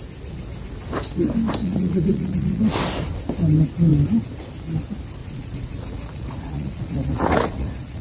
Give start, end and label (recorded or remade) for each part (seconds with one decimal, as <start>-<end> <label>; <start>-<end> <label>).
0.0-1.6 recorded; 1.6-2.7 remade; 2.7-5.2 recorded; 5.2-8.0 remade